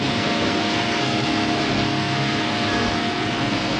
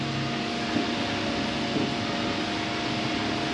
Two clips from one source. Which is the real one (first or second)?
second